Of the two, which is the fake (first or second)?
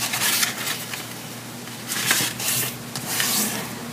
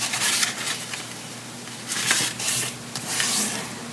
second